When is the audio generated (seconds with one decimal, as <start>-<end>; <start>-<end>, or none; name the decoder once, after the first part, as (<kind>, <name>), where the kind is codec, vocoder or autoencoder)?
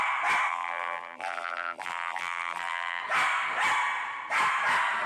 0.5-3.0 (vocoder, BigVGAN v2)